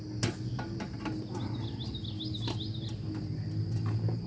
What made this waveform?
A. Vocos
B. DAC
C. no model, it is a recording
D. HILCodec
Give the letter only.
C